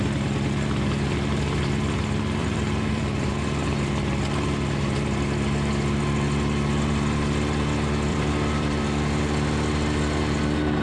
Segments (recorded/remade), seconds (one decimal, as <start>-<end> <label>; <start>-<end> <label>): 0.0-2.4 recorded; 2.4-3.3 remade; 3.3-8.1 recorded; 8.1-8.8 remade; 8.8-10.8 recorded